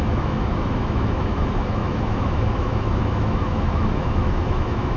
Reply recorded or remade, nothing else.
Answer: remade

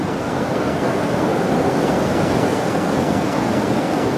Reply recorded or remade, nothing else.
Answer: remade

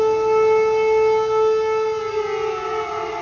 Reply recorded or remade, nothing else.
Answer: recorded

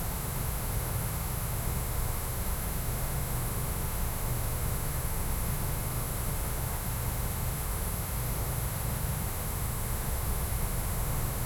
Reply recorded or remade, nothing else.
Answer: remade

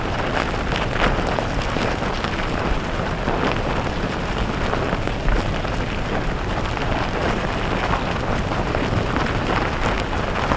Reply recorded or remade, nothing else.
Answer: recorded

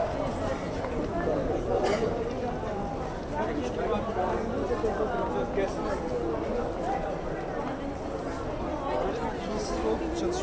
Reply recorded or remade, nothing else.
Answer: recorded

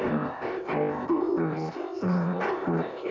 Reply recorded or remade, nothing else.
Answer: remade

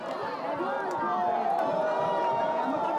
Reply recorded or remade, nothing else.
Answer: remade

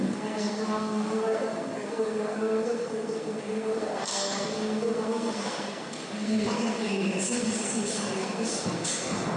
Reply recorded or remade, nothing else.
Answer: remade